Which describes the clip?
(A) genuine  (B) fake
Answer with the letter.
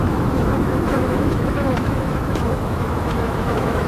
B